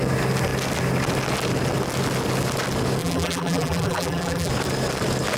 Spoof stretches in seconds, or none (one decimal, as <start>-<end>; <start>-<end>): 3.0-4.5